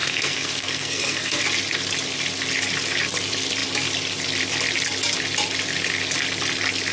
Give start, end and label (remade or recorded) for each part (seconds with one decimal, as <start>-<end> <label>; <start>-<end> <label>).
0.0-1.4 remade; 1.4-6.9 recorded